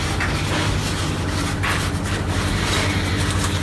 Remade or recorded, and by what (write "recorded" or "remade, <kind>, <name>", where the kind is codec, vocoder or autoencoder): recorded